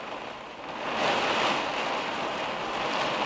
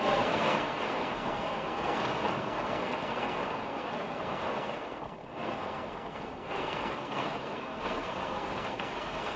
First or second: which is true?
first